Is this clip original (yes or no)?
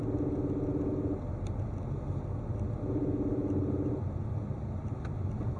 yes